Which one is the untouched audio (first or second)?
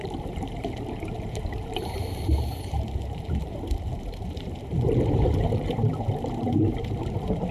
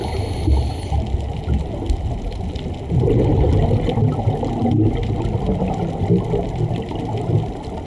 second